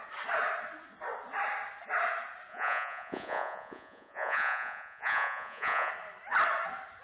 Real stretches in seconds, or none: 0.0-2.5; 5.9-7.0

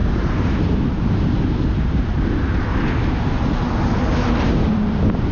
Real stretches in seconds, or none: 2.1-4.0

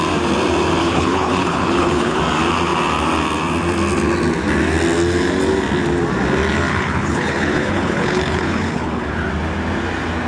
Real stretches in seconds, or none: 0.0-0.8; 2.2-6.7; 9.3-10.3

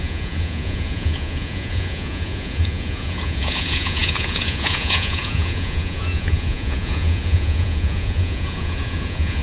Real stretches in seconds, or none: none